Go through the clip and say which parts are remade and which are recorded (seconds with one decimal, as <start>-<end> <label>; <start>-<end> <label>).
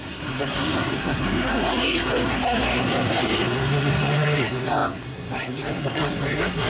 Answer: 0.0-6.7 remade